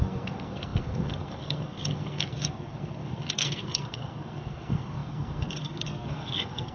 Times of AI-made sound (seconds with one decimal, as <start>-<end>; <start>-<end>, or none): 0.0-6.7